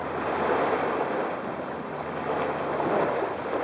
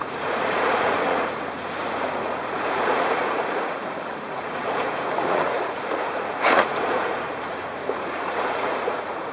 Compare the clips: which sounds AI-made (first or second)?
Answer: second